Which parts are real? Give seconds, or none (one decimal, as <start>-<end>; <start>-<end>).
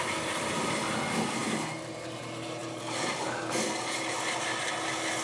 0.0-1.4; 2.2-2.6; 4.1-5.2